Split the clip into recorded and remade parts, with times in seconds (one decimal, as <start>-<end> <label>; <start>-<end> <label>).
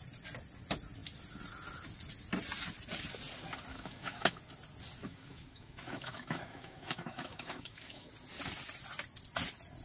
0.0-3.7 recorded; 3.7-4.4 remade; 4.4-5.0 recorded; 5.0-8.1 remade; 8.1-9.8 recorded